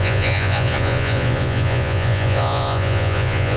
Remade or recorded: remade